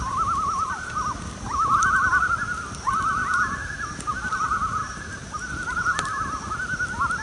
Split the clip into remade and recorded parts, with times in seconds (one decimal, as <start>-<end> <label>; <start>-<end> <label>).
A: 0.0-0.9 remade; 0.9-7.2 recorded